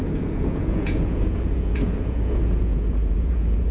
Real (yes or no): no